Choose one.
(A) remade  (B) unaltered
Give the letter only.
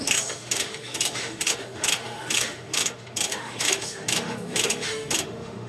A